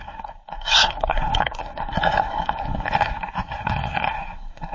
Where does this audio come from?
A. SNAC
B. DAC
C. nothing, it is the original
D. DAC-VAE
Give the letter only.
A